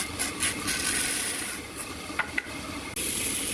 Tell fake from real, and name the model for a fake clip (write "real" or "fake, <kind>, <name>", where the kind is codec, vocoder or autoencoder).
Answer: real